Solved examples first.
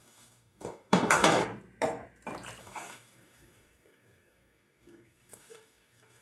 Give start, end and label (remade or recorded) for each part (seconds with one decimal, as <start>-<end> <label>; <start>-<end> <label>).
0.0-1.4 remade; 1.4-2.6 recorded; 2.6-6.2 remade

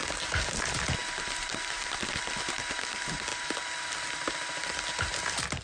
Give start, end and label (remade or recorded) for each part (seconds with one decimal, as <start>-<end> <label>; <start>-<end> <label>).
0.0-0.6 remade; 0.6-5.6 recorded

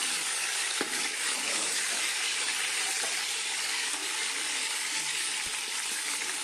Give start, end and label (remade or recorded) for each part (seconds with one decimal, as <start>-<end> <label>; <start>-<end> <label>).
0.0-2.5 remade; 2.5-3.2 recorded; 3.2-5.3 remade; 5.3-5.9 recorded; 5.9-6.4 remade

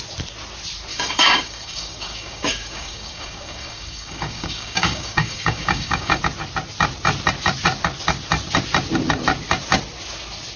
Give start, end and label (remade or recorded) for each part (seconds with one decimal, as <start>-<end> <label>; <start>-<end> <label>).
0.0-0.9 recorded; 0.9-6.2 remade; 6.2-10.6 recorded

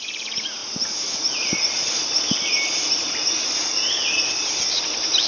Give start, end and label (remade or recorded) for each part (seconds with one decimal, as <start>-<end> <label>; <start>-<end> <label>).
0.0-5.3 recorded